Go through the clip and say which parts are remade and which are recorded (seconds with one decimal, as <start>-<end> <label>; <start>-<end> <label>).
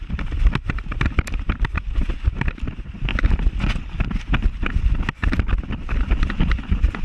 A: 0.0-7.0 recorded